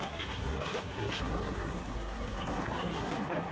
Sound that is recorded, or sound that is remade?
remade